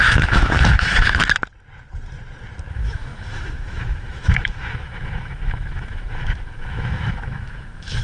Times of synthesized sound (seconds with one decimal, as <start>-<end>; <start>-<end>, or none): 0.0-1.2; 2.7-8.0